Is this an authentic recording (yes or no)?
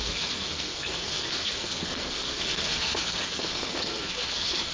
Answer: no